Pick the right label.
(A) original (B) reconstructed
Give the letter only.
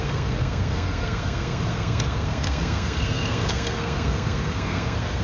B